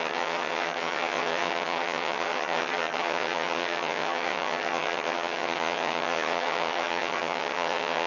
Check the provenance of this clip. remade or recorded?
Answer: remade